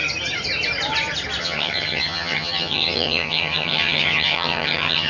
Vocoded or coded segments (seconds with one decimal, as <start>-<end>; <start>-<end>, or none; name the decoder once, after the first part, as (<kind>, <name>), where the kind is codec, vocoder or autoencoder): 1.4-5.1 (vocoder, HiFi-GAN)